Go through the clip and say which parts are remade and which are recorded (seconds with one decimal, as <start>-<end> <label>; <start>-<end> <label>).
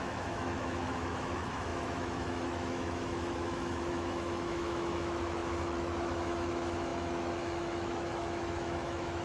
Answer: 0.0-9.2 remade